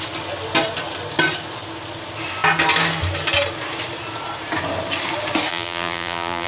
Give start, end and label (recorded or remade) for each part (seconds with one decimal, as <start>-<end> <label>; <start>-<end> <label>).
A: 0.0-5.5 recorded; 5.5-6.5 remade